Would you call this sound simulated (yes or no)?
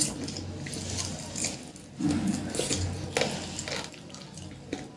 no